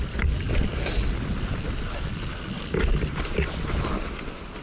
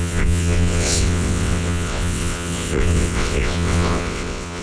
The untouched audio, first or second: first